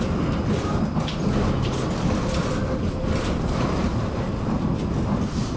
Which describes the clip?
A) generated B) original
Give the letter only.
B